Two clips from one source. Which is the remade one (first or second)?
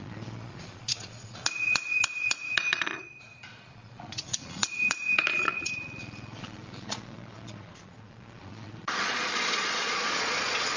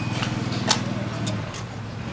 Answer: first